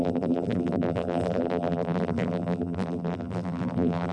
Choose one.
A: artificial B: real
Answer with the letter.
A